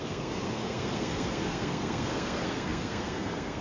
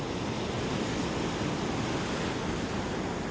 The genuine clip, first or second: second